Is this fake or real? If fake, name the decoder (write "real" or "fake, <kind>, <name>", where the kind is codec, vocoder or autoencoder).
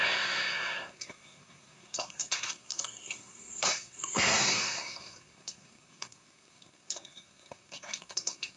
fake, codec, SNAC